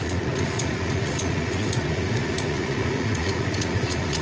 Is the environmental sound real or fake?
fake